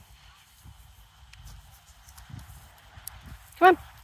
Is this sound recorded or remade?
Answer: recorded